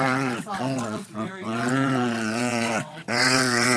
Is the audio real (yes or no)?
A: no